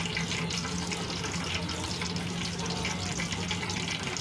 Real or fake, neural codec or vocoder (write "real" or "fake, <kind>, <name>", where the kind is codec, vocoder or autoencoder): real